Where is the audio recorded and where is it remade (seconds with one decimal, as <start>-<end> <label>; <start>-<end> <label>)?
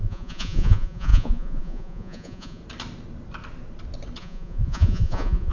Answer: 0.0-2.6 remade; 2.6-4.2 recorded; 4.2-5.5 remade